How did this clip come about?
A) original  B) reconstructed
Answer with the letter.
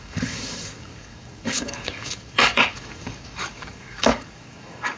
B